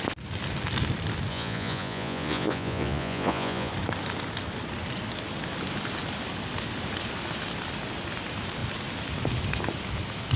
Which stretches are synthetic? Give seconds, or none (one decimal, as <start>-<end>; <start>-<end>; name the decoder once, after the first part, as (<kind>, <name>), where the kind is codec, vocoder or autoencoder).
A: 1.3-3.7 (vocoder, Vocos)